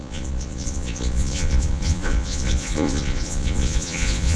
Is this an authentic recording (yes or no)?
no